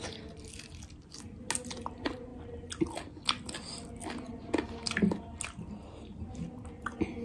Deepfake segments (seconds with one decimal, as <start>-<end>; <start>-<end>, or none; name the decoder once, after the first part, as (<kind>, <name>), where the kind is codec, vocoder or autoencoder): none